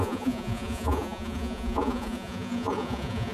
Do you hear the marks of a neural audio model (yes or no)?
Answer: yes